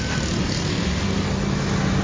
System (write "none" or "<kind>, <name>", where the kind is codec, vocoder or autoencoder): none